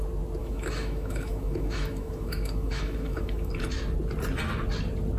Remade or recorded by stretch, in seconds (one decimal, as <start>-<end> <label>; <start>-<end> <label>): 0.0-0.4 recorded; 0.4-3.5 remade; 3.5-5.2 recorded